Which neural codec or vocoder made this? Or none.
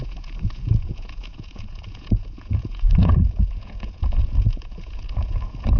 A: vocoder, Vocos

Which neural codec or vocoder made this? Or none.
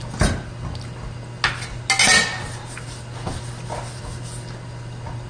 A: none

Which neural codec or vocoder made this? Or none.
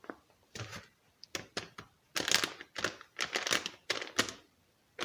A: none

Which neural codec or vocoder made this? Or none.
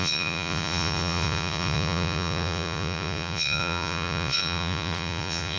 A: vocoder, Vocos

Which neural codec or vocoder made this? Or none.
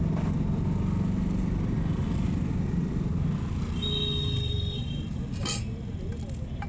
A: none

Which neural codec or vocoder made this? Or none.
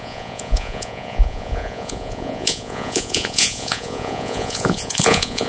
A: vocoder, Vocos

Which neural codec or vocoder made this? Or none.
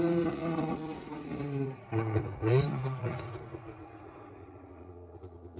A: vocoder, Vocos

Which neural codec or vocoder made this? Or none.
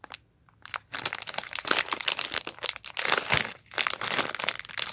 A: none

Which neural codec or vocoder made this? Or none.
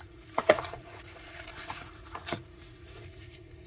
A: vocoder, Vocos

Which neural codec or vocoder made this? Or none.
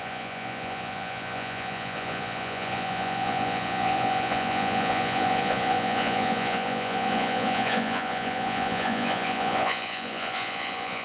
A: vocoder, Vocos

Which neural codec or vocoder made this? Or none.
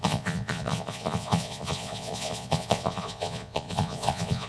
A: vocoder, Vocos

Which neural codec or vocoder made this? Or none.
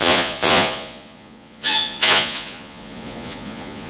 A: vocoder, Vocos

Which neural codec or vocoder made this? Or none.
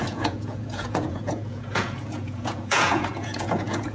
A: vocoder, Vocos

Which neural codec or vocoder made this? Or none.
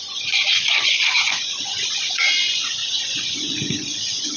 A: vocoder, Vocos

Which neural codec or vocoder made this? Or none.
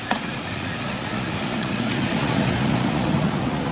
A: vocoder, Vocos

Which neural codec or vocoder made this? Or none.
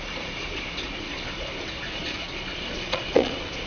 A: vocoder, Vocos